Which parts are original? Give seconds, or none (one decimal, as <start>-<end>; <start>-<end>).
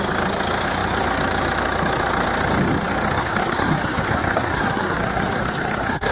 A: 0.0-3.2